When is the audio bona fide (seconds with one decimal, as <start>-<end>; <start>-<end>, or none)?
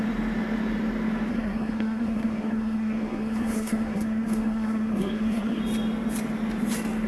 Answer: 0.0-1.3; 5.6-7.1